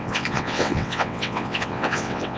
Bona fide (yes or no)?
no